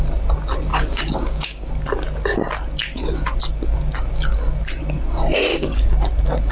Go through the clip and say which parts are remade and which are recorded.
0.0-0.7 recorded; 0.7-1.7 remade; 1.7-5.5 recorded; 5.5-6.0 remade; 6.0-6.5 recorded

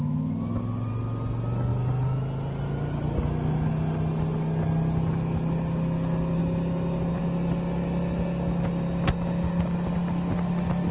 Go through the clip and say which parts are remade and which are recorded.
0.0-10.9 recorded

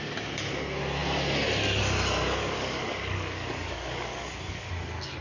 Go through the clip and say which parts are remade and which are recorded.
0.0-2.4 recorded; 2.4-4.7 remade; 4.7-5.2 recorded

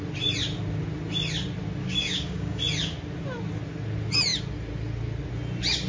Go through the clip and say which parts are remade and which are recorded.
0.0-1.8 recorded; 1.8-2.6 remade; 2.6-5.9 recorded

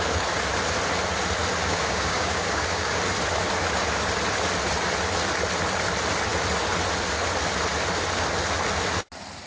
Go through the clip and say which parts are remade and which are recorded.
0.0-1.6 recorded; 1.6-3.0 remade; 3.0-9.5 recorded

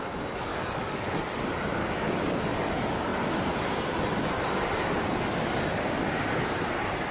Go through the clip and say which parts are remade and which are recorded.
0.0-0.5 recorded; 0.5-1.2 remade; 1.2-1.8 recorded; 1.8-2.7 remade; 2.7-7.1 recorded

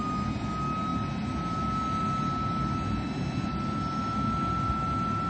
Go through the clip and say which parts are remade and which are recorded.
0.0-5.3 recorded

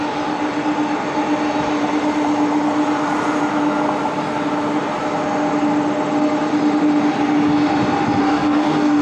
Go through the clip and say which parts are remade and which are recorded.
0.0-8.2 recorded; 8.2-9.0 remade